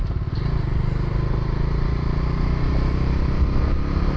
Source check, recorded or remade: recorded